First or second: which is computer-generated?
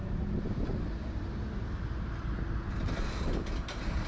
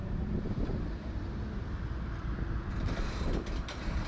second